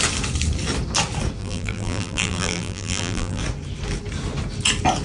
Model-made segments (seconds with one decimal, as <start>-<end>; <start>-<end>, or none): 1.4-3.4